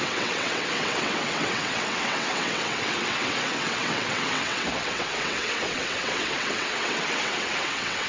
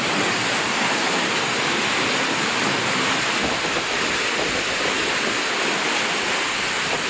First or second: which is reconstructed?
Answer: first